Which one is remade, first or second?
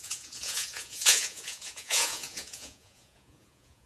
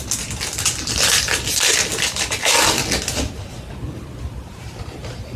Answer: first